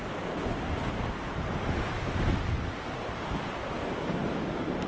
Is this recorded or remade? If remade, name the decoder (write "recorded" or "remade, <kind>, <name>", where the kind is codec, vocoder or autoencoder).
recorded